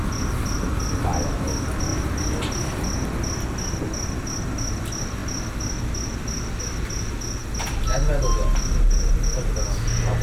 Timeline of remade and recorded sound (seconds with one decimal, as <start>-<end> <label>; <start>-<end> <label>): 0.0-10.2 recorded